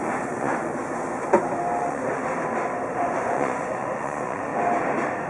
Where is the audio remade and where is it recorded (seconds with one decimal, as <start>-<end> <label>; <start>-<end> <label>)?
0.0-0.7 remade; 0.7-1.8 recorded; 1.8-2.2 remade; 2.2-2.9 recorded; 2.9-4.5 remade; 4.5-5.3 recorded